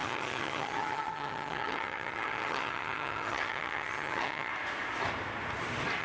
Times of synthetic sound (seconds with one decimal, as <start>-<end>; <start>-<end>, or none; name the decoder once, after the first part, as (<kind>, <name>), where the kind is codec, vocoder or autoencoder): 0.0-4.5 (vocoder, HiFi-GAN)